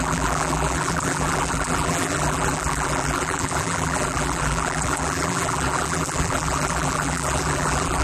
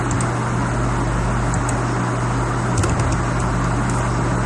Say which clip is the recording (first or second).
second